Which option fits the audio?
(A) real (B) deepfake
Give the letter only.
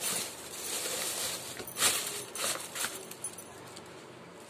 A